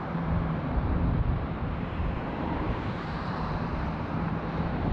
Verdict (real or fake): fake